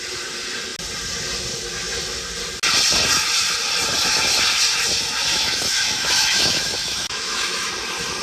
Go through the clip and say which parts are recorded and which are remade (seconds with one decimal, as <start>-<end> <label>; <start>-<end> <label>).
0.0-5.3 recorded; 5.3-7.7 remade; 7.7-8.2 recorded